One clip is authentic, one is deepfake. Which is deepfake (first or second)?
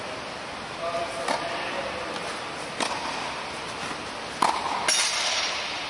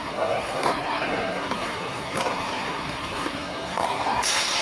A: second